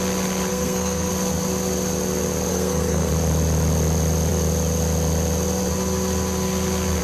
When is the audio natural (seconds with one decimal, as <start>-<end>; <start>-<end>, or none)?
0.0-0.5; 1.1-2.5; 3.1-7.0